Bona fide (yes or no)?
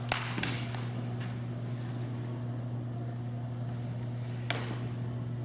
yes